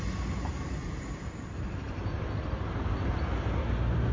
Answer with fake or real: real